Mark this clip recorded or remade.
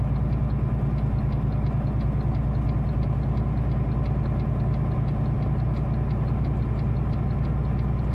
recorded